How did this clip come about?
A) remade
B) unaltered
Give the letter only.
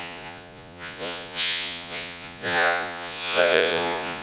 A